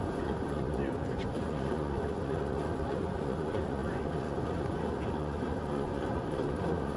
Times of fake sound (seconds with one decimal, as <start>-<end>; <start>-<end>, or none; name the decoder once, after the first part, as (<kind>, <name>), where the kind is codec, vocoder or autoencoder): 0.0-7.0 (vocoder, Vocos)